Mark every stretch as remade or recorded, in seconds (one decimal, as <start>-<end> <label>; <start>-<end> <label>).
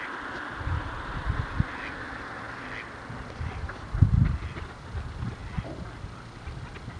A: 0.0-7.0 recorded